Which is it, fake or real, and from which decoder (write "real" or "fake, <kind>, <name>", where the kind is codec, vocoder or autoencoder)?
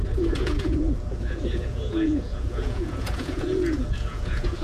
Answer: fake, vocoder, Vocos